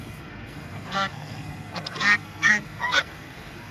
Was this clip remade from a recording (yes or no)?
yes